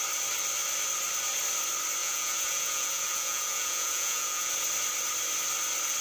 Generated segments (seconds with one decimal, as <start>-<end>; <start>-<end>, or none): 2.0-4.5